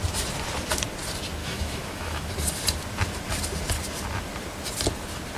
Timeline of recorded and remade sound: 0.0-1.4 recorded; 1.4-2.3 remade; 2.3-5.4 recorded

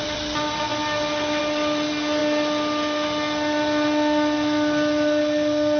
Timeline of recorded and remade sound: 0.0-5.8 recorded

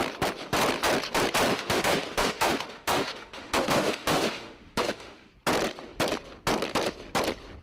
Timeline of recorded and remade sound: 0.0-1.5 recorded; 1.5-5.3 remade; 5.3-7.6 recorded

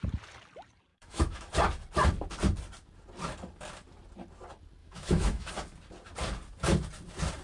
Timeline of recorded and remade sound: 0.0-0.9 recorded; 0.9-1.5 remade; 1.5-4.8 recorded; 4.8-5.5 remade; 5.5-7.4 recorded

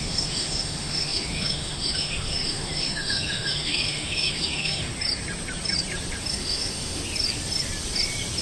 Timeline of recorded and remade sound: 0.0-4.9 remade; 4.9-6.3 recorded; 6.3-7.0 remade; 7.0-8.4 recorded

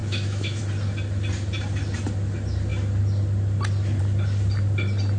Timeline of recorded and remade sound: 0.0-0.6 remade; 0.6-5.2 recorded

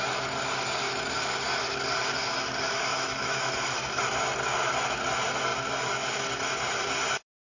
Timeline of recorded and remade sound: 0.0-2.9 recorded; 2.9-4.0 remade; 4.0-7.5 recorded